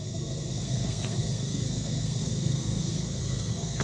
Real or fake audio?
fake